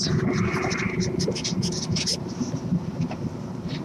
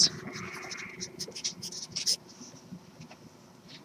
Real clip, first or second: second